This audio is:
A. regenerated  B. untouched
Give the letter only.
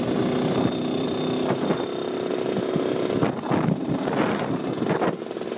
B